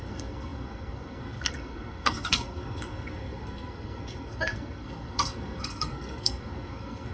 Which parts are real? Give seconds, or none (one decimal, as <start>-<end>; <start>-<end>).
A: none